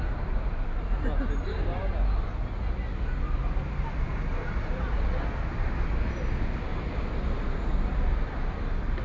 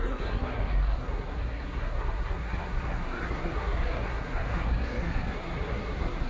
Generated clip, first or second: second